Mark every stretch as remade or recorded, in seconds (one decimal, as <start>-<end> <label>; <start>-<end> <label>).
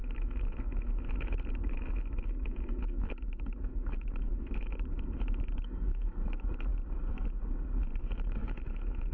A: 0.0-6.7 remade; 6.7-8.0 recorded; 8.0-9.1 remade